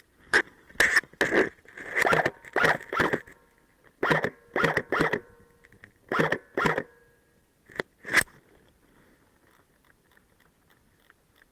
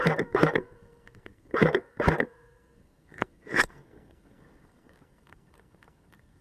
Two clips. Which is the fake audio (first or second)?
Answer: second